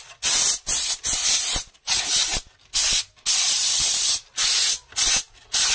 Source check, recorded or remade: recorded